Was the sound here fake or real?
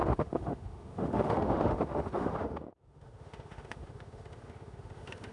fake